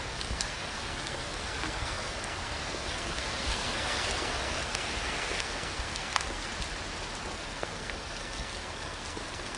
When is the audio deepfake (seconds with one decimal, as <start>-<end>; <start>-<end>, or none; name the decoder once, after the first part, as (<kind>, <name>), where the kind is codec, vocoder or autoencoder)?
0.0-6.5 (codec, SNAC); 7.2-9.6